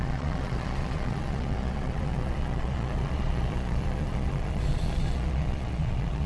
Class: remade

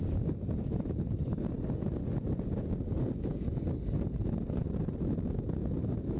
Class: recorded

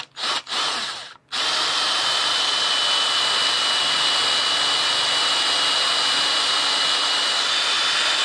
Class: recorded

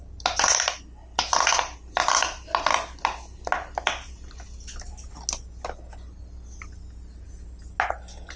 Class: recorded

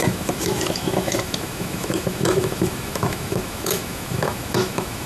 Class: remade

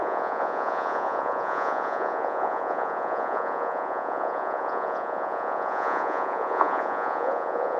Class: remade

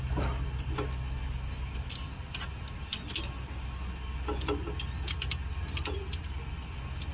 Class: recorded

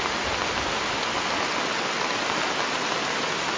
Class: recorded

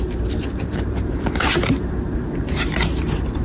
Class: remade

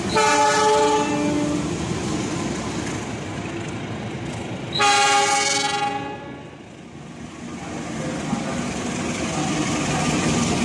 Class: recorded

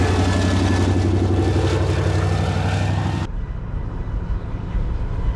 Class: recorded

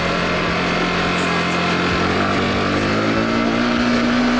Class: recorded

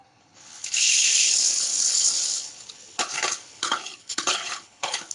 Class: remade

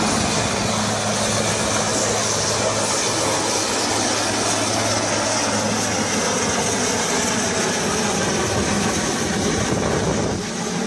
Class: recorded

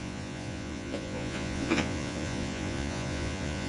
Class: remade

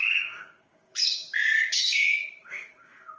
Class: remade